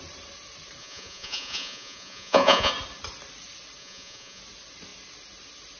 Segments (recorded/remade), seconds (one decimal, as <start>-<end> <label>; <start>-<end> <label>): 0.0-0.8 recorded; 0.8-2.7 remade; 2.7-3.8 recorded; 3.8-4.4 remade; 4.4-5.8 recorded

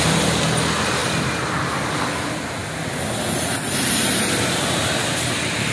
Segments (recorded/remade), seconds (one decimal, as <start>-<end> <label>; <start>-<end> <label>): 0.0-5.7 recorded

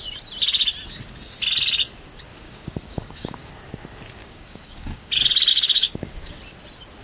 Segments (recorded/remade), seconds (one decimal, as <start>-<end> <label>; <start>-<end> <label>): 0.0-2.3 recorded; 2.3-3.5 remade; 3.5-4.2 recorded; 4.2-5.1 remade; 5.1-5.5 recorded; 5.5-6.4 remade; 6.4-7.0 recorded

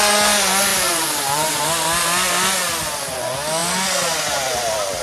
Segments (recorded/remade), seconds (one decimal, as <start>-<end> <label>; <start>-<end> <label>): 0.0-0.7 recorded; 0.7-1.7 remade; 1.7-5.0 recorded

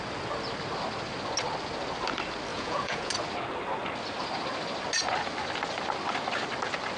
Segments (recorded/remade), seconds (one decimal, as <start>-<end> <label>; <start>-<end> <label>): 0.0-2.5 recorded; 2.5-3.1 remade; 3.1-7.0 recorded

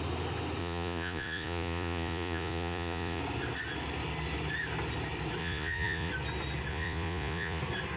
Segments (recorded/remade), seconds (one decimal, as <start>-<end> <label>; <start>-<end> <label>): 0.0-0.6 recorded; 0.6-3.2 remade; 3.2-5.4 recorded; 5.4-6.1 remade; 6.1-6.7 recorded; 6.7-7.6 remade; 7.6-8.0 recorded

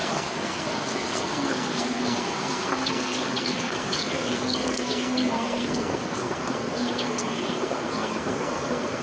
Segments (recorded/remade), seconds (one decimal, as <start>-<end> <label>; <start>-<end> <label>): 0.0-9.0 remade

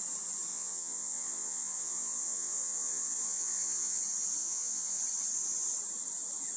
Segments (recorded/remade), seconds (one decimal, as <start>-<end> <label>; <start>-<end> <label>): 0.0-0.5 recorded; 0.5-4.0 remade; 4.0-4.4 recorded; 4.4-5.0 remade; 5.0-6.6 recorded